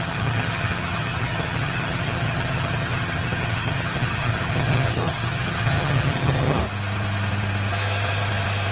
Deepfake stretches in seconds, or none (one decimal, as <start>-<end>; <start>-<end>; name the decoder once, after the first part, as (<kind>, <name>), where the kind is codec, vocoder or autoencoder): 0.0-6.6 (vocoder, HiFi-GAN)